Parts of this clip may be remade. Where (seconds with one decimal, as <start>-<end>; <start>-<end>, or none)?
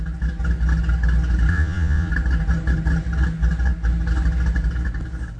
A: 1.5-2.1